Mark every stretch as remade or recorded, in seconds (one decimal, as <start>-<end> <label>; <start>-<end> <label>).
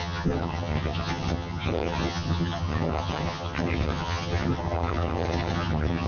0.0-6.1 remade